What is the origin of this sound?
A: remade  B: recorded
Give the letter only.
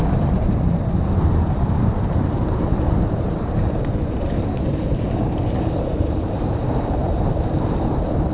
A